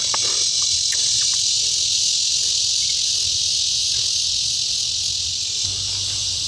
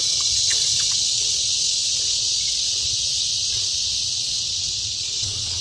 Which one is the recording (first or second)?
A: first